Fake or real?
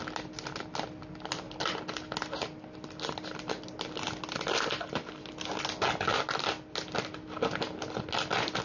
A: real